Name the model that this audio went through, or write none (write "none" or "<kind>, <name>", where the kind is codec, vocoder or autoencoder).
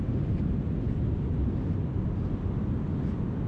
none